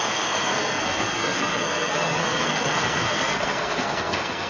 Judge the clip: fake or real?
fake